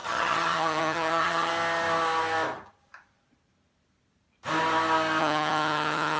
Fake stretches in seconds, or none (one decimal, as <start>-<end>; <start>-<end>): 0.0-1.5; 5.2-6.2